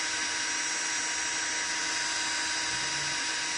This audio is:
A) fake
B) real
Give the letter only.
B